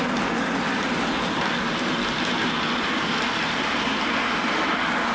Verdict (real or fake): real